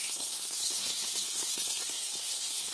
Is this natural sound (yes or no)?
no